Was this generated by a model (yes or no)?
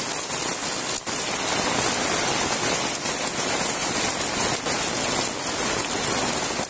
no